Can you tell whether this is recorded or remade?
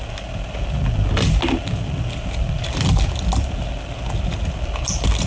recorded